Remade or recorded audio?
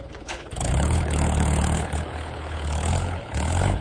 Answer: remade